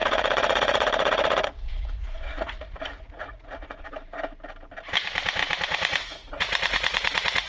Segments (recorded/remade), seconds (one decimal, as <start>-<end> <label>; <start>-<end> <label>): 0.0-3.9 remade; 3.9-5.4 recorded; 5.4-7.5 remade